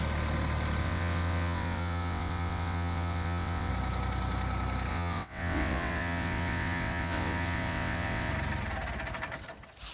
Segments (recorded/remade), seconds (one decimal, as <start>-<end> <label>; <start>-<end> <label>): 0.0-0.8 recorded; 0.8-3.7 remade; 3.7-4.9 recorded; 4.9-8.3 remade; 8.3-9.9 recorded